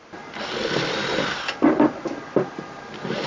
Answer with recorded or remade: recorded